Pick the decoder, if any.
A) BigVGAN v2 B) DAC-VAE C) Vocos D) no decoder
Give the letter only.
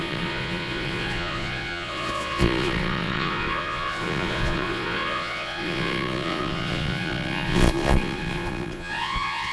C